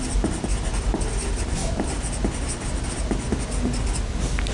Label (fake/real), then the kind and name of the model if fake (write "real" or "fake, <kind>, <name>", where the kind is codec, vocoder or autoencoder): real